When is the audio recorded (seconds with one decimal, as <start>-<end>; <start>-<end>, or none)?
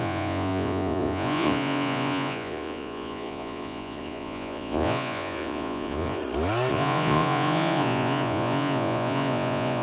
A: 6.2-6.7